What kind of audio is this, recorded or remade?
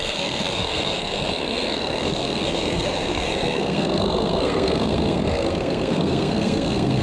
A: remade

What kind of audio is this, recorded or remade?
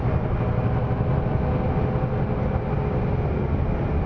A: recorded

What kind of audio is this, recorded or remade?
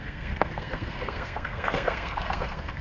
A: remade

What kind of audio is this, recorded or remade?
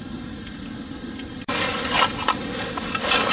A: recorded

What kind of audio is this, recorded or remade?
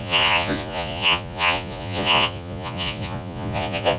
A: remade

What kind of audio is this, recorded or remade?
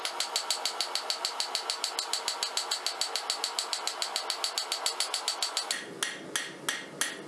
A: recorded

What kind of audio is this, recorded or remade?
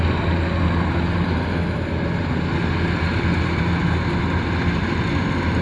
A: recorded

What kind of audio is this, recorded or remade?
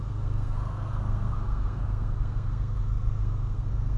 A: remade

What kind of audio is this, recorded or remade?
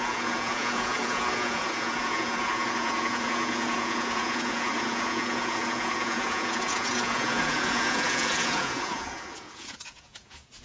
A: remade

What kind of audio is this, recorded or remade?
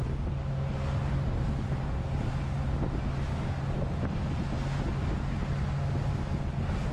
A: recorded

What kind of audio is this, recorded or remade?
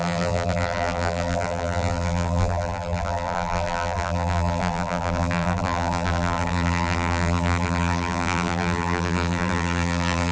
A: remade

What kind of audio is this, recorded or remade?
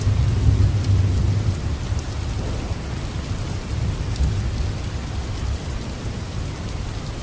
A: recorded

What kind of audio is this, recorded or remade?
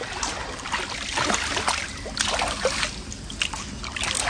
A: recorded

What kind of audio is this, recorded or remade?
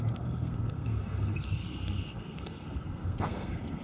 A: remade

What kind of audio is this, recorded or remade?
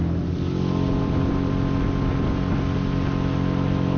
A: recorded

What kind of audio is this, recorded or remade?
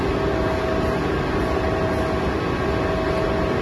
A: recorded